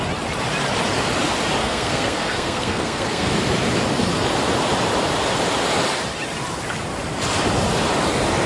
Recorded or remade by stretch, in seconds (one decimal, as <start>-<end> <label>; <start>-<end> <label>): 0.0-1.6 recorded; 1.6-3.3 remade; 3.3-8.5 recorded